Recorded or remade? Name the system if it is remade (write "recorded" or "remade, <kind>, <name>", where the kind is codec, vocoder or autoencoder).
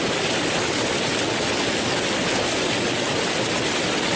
recorded